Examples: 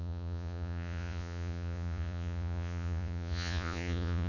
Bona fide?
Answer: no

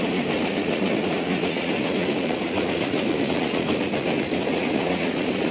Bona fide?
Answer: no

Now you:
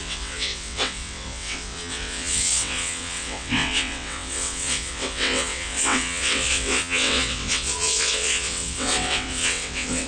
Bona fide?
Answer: no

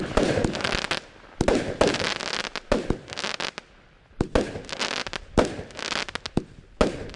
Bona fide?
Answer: yes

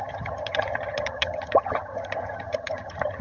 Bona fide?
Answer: no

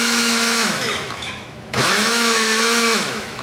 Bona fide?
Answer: no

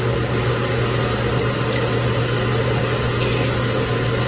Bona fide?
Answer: yes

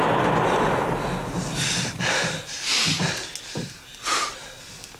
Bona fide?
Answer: yes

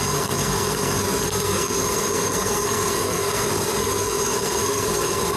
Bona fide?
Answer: no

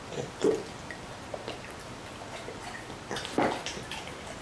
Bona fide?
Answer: yes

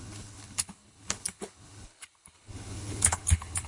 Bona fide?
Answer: no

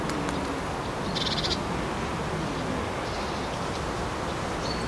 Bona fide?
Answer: yes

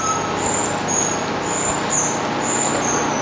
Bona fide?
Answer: yes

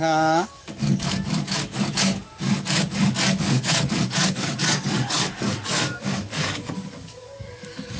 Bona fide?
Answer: no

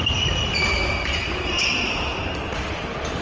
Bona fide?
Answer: no